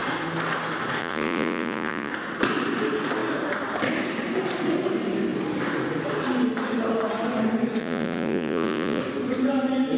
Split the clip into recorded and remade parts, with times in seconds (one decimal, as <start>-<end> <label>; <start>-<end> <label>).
0.0-1.0 recorded; 1.0-2.1 remade; 2.1-7.8 recorded; 7.8-9.0 remade; 9.0-10.0 recorded